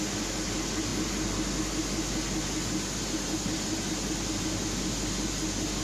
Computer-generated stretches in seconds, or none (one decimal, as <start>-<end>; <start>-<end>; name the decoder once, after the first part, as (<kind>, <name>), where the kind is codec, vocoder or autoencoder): none